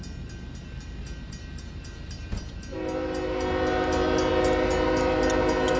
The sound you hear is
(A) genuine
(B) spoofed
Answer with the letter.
A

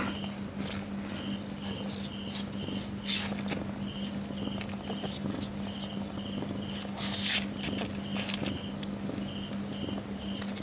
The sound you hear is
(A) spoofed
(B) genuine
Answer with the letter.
B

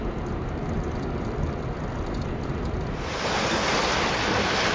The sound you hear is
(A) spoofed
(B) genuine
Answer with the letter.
B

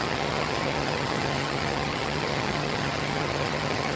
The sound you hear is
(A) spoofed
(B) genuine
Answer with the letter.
A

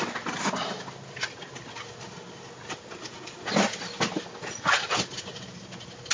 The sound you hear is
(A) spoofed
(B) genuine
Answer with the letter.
B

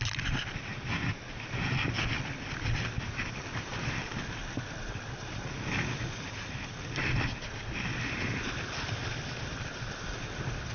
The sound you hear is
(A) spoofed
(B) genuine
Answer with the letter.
B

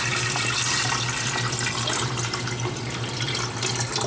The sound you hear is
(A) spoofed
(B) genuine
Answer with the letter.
B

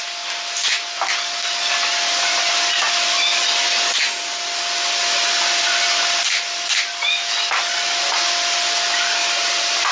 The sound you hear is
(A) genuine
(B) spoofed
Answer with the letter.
A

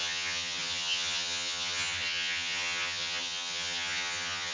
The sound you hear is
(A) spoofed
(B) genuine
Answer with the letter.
A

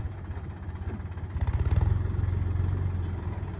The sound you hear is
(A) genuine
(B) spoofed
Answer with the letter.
A